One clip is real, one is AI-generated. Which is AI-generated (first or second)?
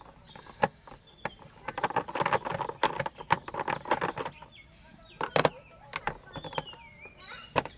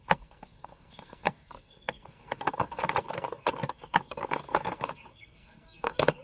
second